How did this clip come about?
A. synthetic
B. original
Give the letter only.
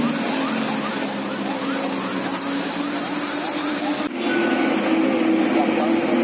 B